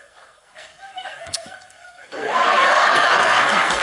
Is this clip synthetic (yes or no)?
yes